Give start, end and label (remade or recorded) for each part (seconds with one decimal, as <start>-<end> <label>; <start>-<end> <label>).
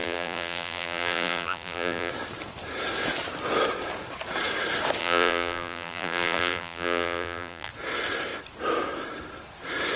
0.0-2.1 remade; 2.1-5.0 recorded; 5.0-7.7 remade; 7.7-10.0 recorded